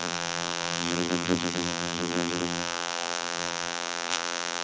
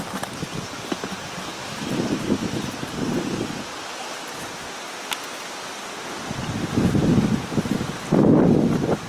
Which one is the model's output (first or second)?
first